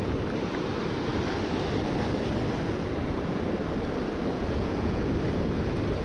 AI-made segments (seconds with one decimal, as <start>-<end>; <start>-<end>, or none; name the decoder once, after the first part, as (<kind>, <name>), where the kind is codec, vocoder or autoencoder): 4.4-5.1 (vocoder, Vocos)